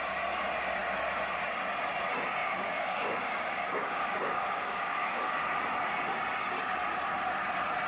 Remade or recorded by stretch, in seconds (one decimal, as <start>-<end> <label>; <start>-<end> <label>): 0.0-2.4 recorded; 2.4-5.6 remade; 5.6-7.9 recorded

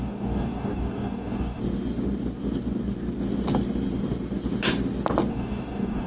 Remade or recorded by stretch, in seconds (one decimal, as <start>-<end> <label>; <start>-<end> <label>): 0.0-1.6 remade; 1.6-5.3 recorded; 5.3-6.1 remade

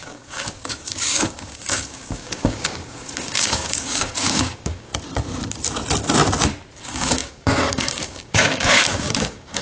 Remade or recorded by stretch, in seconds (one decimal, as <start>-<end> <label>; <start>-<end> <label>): 0.0-4.9 remade; 4.9-6.8 recorded; 6.8-9.6 remade

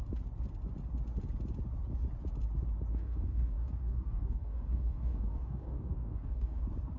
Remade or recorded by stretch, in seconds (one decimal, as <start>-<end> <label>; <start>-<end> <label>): 0.0-2.9 recorded; 2.9-6.6 remade; 6.6-7.0 recorded

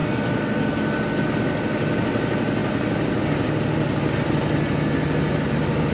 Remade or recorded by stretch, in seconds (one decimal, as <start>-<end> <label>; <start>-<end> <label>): 0.0-5.9 recorded

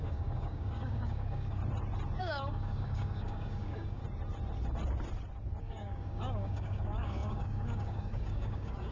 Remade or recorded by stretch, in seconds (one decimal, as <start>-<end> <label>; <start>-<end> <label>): 0.0-1.6 remade; 1.6-2.2 recorded; 2.2-4.0 remade; 4.0-5.6 recorded; 5.6-8.9 remade

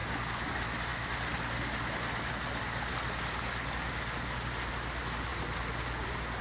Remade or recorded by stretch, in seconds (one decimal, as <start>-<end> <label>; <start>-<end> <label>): 0.0-6.4 recorded

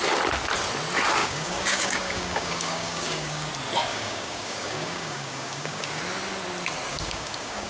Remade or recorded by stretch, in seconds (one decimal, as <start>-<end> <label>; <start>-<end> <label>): 0.0-1.2 recorded; 1.2-3.5 remade; 3.5-3.9 recorded; 3.9-6.0 remade; 6.0-6.9 recorded; 6.9-7.7 remade